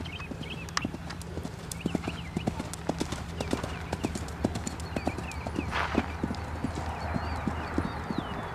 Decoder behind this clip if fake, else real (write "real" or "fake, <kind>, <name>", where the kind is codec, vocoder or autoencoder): real